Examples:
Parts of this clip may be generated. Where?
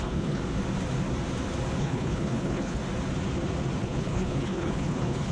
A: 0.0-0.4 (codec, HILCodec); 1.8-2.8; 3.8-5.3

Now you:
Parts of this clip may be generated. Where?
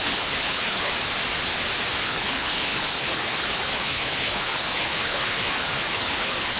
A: 0.0-0.9 (codec, HILCodec); 2.0-6.6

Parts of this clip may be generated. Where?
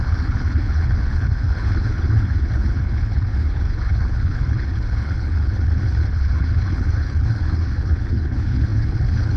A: 0.0-9.4 (codec, HILCodec)